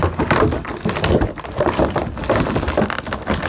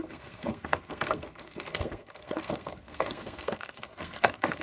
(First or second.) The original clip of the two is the first